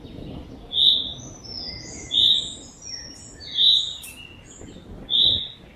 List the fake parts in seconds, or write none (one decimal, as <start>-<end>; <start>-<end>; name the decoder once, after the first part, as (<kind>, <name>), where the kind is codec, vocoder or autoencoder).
none